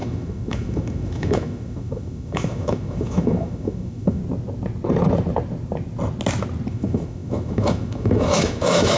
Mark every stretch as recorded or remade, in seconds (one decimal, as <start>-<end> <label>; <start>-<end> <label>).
0.0-4.2 remade; 4.2-6.7 recorded; 6.7-9.0 remade